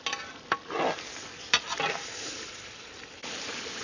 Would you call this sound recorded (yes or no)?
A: yes